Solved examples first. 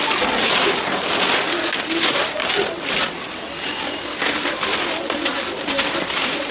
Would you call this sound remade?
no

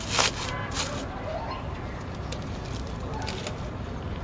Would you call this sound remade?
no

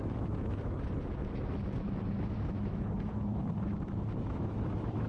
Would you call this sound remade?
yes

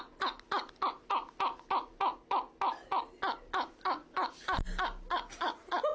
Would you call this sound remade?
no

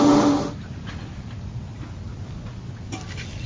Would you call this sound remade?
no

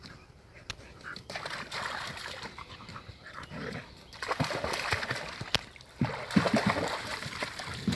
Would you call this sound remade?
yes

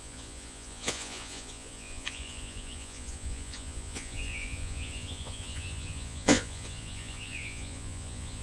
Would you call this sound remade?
yes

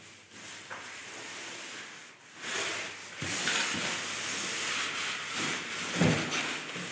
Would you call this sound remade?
no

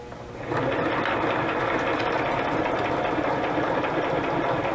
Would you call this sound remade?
no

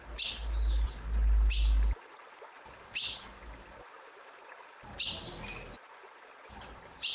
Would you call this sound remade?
no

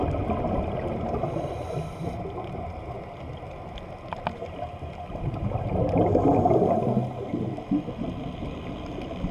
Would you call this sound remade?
no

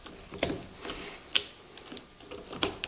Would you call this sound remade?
no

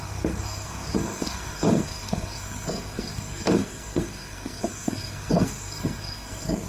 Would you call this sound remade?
yes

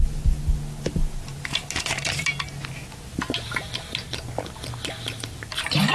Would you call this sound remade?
no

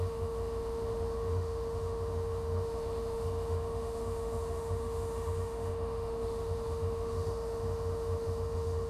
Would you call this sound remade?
yes